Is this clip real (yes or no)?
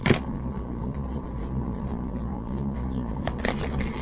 no